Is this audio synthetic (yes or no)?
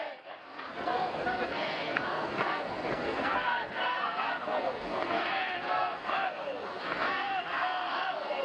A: yes